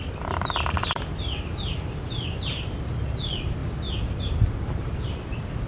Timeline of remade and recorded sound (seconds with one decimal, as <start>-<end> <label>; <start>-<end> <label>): 0.0-5.7 recorded

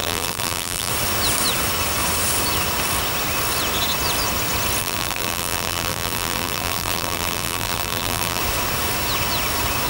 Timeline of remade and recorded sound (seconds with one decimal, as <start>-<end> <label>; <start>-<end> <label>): 0.0-0.9 remade; 0.9-4.8 recorded; 4.8-8.4 remade; 8.4-9.9 recorded

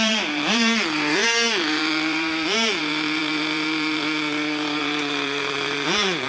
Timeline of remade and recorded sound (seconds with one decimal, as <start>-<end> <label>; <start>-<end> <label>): 0.0-6.3 remade

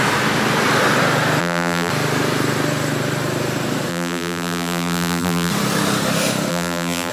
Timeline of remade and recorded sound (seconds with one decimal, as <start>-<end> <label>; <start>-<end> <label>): 0.0-1.4 recorded; 1.4-1.9 remade; 1.9-3.9 recorded; 3.9-5.5 remade; 5.5-6.5 recorded; 6.5-7.1 remade